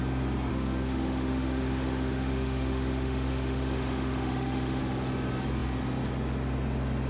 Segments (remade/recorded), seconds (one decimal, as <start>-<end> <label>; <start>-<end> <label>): 0.0-0.5 recorded; 0.5-4.8 remade; 4.8-7.1 recorded

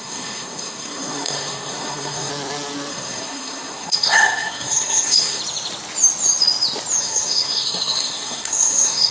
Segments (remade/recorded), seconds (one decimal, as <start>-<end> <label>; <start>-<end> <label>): 0.0-2.3 remade; 2.3-2.9 recorded; 2.9-5.4 remade; 5.4-7.0 recorded; 7.0-9.1 remade

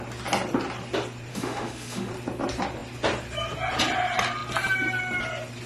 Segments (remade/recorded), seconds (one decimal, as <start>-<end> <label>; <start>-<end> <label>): 0.0-1.3 recorded; 1.3-2.1 remade; 2.1-5.7 recorded

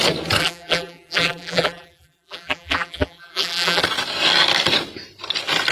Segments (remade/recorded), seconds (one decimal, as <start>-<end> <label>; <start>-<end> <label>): 0.0-0.4 recorded; 0.4-3.8 remade; 3.8-5.7 recorded

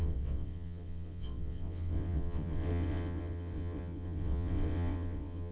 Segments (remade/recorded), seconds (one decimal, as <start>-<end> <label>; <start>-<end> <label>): 0.0-5.5 remade

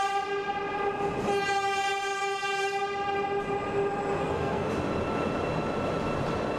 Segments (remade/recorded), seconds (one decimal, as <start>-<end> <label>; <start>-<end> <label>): 0.0-4.2 recorded; 4.2-4.7 remade; 4.7-6.6 recorded

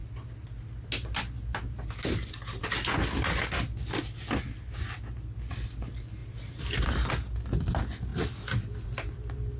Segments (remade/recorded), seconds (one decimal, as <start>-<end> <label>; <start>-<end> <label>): 0.0-8.1 recorded; 8.1-9.6 remade

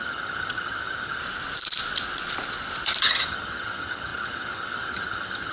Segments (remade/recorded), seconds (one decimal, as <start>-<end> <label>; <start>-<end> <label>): 0.0-1.2 remade; 1.2-3.0 recorded; 3.0-5.5 remade